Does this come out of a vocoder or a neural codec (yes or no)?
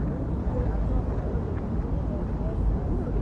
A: no